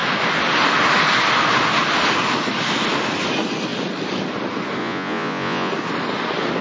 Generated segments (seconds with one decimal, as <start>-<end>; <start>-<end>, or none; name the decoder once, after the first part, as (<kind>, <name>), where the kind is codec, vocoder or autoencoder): 4.8-5.7 (vocoder, Vocos)